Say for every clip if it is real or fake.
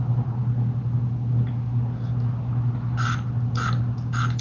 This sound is real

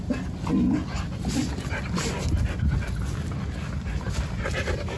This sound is real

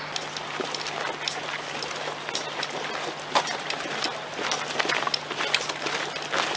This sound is real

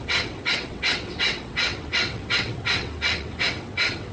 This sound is fake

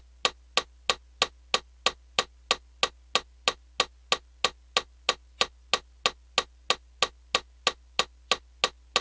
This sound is real